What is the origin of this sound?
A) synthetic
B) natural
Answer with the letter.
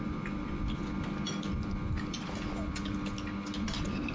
B